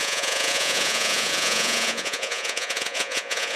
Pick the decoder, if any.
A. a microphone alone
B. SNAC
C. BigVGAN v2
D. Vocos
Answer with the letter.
D